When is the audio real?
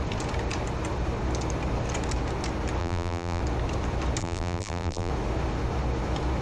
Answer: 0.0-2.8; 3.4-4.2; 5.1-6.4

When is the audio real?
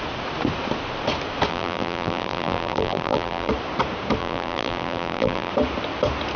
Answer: 0.0-1.5; 3.5-4.2; 5.5-6.4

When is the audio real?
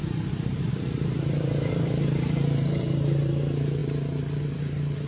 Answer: 3.8-4.4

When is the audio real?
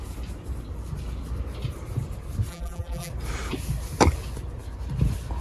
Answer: 0.0-2.5; 3.1-5.4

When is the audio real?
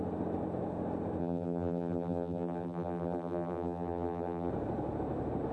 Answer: 0.0-1.2; 4.5-5.5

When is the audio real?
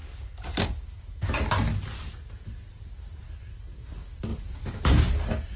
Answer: 0.0-4.3; 4.9-5.6